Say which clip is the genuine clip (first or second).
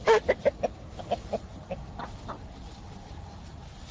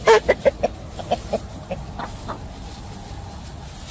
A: second